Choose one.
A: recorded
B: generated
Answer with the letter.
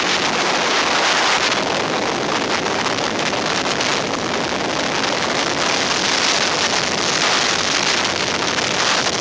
A